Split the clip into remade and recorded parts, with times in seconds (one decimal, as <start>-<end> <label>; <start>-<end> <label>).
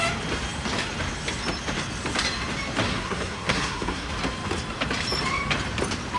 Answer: 0.0-2.9 recorded; 2.9-4.1 remade; 4.1-6.2 recorded